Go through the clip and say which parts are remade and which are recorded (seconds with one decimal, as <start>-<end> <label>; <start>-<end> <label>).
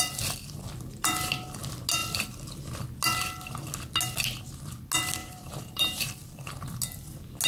0.0-5.2 recorded; 5.2-6.5 remade; 6.5-7.5 recorded